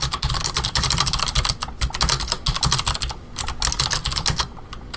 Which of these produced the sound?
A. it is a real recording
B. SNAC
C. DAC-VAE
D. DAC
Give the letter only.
A